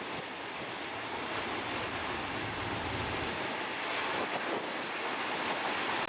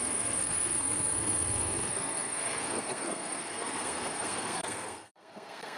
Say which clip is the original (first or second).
first